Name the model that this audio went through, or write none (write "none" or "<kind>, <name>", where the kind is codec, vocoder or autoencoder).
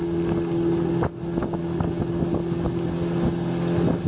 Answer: none